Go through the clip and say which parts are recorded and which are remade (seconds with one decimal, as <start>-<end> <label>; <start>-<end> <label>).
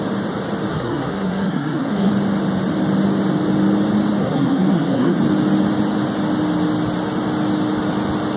0.0-0.7 recorded; 0.7-2.1 remade; 2.1-4.2 recorded; 4.2-5.2 remade; 5.2-8.4 recorded